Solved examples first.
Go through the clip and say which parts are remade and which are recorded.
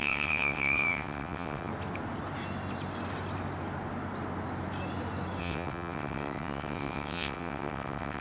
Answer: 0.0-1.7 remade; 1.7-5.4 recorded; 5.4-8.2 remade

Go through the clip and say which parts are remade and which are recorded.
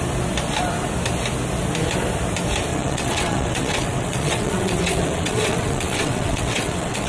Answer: 0.0-2.7 recorded; 2.7-7.1 remade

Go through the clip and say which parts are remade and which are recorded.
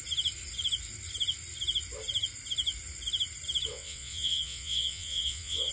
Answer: 0.0-3.7 recorded; 3.7-5.7 remade